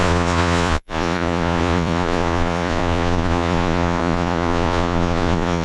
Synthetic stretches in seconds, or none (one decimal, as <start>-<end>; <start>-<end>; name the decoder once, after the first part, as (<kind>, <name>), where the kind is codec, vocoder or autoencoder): 0.0-5.6 (vocoder, Vocos)